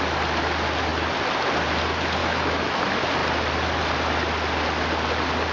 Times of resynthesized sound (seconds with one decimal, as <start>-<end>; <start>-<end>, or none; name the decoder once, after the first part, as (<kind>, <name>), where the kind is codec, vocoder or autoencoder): 2.2-2.8 (autoencoder, DAC-VAE)